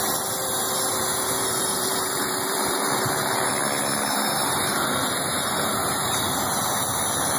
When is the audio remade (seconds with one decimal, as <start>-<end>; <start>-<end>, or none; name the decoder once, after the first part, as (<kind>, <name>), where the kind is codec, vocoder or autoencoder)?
1.0-3.5 (vocoder, BigVGAN v2); 4.7-7.0